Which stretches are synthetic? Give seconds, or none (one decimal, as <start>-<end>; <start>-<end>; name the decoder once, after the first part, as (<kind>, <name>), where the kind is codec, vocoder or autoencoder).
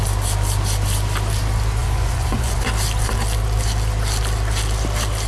1.8-2.7 (vocoder, Vocos)